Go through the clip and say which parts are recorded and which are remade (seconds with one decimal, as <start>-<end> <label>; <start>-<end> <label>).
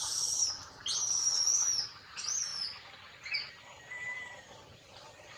0.0-0.8 remade; 0.8-2.0 recorded; 2.0-2.5 remade; 2.5-3.5 recorded; 3.5-5.4 remade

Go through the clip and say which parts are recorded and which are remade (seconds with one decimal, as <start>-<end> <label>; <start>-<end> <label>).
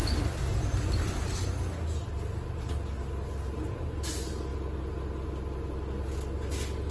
0.0-6.9 recorded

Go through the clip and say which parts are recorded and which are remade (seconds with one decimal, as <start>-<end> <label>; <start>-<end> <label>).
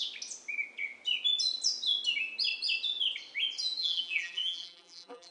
0.0-3.8 recorded; 3.8-5.3 remade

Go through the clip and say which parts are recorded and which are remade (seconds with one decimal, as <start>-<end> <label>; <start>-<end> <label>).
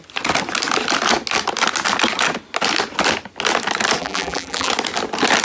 0.0-4.0 recorded; 4.0-4.7 remade; 4.7-5.4 recorded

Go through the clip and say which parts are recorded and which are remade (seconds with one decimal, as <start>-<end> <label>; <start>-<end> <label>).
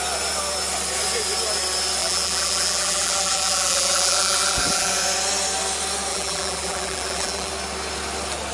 0.0-2.0 recorded; 2.0-4.9 remade; 4.9-6.1 recorded; 6.1-7.5 remade; 7.5-8.5 recorded